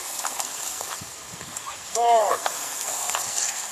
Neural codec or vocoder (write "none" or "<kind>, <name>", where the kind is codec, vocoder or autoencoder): codec, SNAC